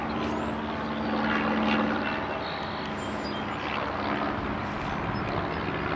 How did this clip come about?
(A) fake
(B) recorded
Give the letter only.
B